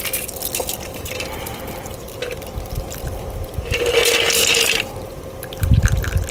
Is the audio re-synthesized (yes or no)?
no